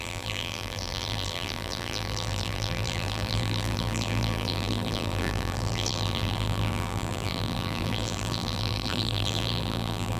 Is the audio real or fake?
fake